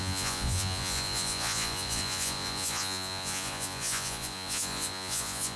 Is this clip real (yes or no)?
no